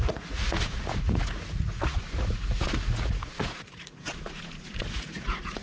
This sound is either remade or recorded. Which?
remade